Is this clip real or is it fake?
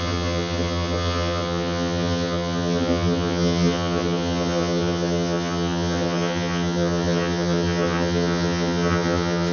fake